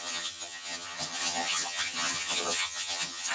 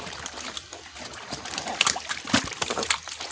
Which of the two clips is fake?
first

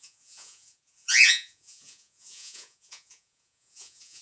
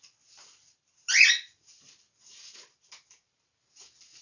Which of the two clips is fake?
first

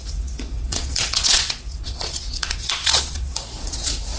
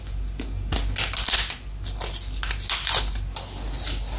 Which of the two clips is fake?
first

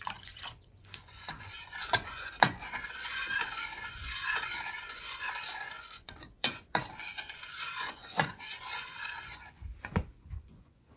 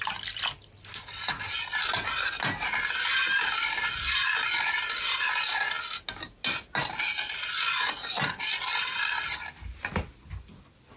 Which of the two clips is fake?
first